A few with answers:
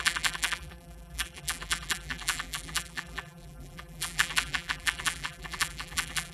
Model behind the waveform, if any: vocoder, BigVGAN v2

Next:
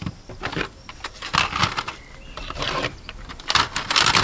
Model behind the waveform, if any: vocoder, BigVGAN v2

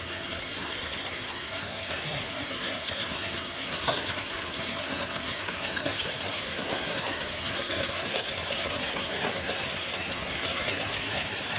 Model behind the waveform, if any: codec, SNAC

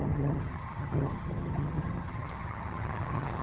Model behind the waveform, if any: vocoder, HiFi-GAN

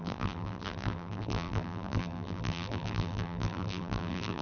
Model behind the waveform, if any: vocoder, BigVGAN v2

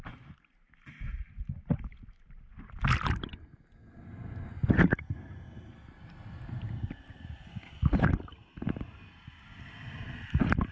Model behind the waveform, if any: none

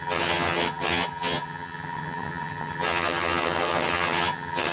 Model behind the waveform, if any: vocoder, HiFi-GAN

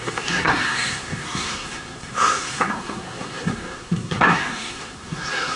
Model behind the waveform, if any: codec, SNAC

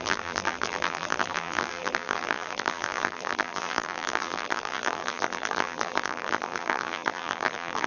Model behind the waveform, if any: vocoder, BigVGAN v2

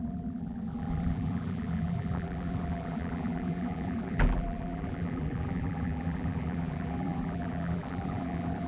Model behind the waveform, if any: vocoder, BigVGAN v2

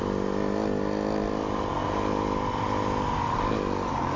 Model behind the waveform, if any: none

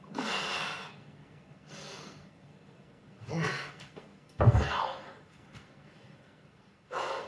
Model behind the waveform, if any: codec, SNAC